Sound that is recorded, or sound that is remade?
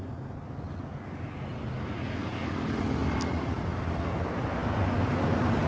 recorded